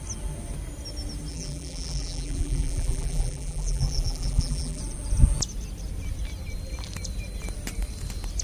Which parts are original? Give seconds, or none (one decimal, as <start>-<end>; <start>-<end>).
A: 0.0-1.3; 4.8-8.4